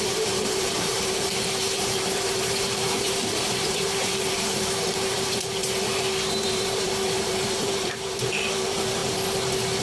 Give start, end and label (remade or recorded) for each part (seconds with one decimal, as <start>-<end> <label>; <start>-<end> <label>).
0.0-5.6 remade; 5.6-6.4 recorded; 6.4-9.0 remade; 9.0-9.8 recorded